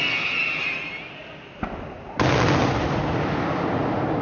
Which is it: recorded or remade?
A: recorded